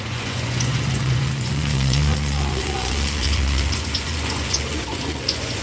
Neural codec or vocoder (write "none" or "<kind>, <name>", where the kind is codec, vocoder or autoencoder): vocoder, Vocos